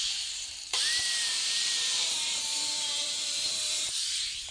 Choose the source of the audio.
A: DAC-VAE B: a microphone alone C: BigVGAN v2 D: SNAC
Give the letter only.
C